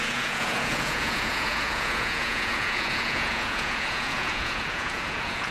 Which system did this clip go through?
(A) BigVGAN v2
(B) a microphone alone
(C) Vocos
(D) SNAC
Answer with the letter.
C